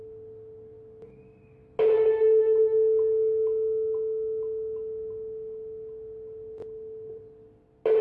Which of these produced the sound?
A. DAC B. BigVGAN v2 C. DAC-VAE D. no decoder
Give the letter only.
D